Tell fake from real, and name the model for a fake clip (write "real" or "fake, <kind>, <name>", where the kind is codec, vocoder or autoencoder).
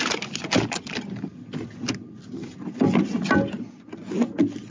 real